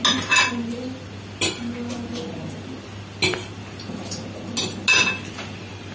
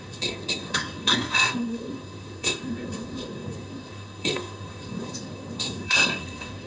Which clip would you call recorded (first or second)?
first